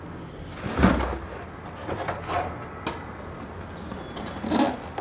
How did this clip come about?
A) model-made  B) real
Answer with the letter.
B